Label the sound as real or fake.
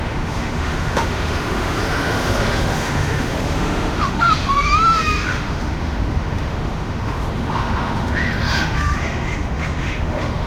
fake